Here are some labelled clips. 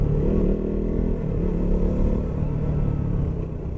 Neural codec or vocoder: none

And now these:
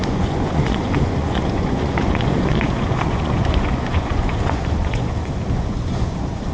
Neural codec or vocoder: vocoder, Vocos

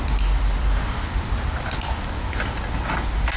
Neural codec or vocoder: none